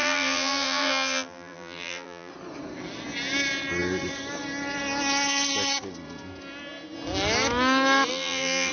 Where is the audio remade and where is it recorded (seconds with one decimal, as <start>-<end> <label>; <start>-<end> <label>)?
0.0-2.3 remade; 2.3-8.1 recorded; 8.1-8.7 remade